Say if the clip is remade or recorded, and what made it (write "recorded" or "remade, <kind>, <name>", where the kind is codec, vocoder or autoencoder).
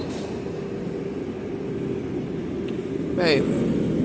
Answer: recorded